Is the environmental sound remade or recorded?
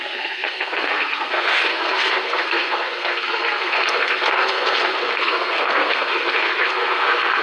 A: remade